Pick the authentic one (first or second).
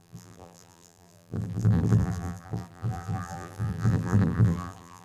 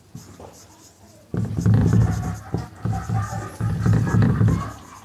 second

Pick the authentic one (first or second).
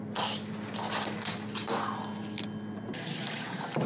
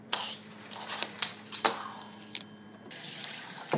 first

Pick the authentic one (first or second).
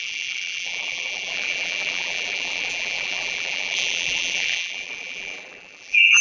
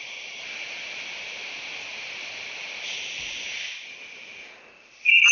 second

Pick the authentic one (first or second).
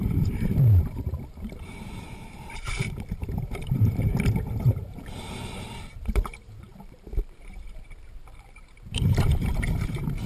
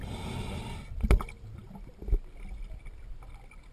second